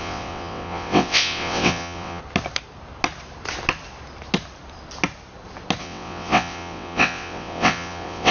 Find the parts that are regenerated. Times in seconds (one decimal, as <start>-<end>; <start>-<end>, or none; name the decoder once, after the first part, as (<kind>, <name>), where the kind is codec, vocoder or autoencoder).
0.0-2.2 (vocoder, WaveNeXt); 5.8-8.3